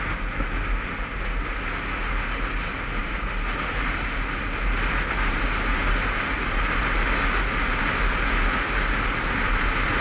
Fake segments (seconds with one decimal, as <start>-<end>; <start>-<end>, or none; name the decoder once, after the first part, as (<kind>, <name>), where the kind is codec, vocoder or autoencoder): none